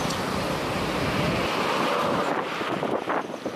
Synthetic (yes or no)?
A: no